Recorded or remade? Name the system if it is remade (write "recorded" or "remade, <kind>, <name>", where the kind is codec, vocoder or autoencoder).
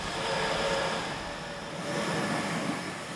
recorded